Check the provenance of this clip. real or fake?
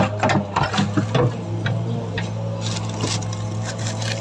real